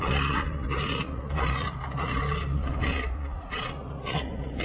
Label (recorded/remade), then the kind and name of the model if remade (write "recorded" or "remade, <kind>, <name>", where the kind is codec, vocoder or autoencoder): remade, vocoder, Vocos